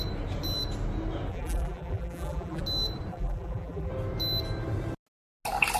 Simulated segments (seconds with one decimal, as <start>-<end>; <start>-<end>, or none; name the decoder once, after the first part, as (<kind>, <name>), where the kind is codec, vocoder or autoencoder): 1.3-2.6 (vocoder, BigVGAN v2); 3.1-3.9